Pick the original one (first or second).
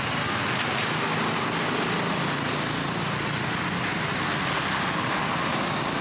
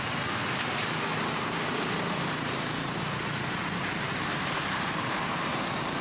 first